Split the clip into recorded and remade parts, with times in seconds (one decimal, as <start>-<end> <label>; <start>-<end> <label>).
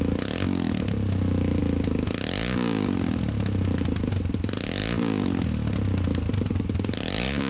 0.0-7.5 recorded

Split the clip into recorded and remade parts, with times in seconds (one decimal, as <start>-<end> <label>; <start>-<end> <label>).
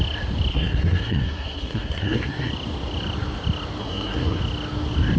0.0-0.5 recorded; 0.5-2.5 remade; 2.5-3.8 recorded; 3.8-4.4 remade; 4.4-5.2 recorded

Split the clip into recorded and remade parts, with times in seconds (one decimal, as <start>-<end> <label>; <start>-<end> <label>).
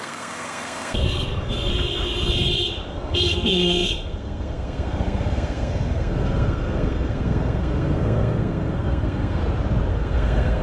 0.0-1.7 remade; 1.7-2.9 recorded; 2.9-9.4 remade; 9.4-9.9 recorded; 9.9-10.6 remade